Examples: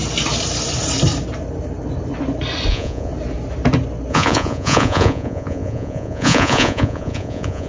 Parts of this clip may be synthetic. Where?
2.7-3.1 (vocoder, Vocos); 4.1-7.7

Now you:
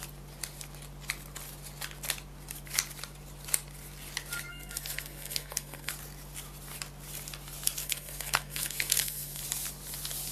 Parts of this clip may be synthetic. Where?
4.5-5.9 (codec, SNAC); 7.8-9.4

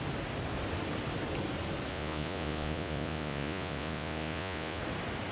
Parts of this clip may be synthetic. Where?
1.9-4.8 (vocoder, Vocos)

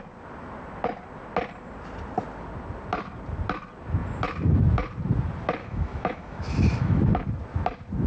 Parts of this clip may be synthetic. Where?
5.6-7.0 (autoencoder, DAC-VAE)

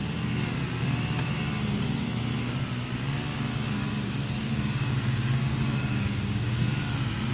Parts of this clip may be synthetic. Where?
4.4-6.6 (codec, DAC)

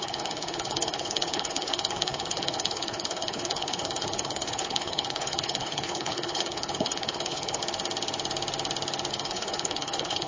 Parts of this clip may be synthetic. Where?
0.0-7.6 (codec, HILCodec); 9.1-10.3

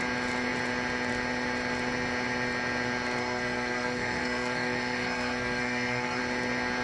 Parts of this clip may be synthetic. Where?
3.2-6.2 (codec, SNAC)

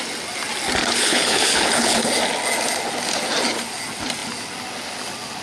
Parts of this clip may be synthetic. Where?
0.8-2.1 (codec, HILCodec)